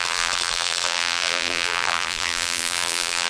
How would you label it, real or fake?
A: fake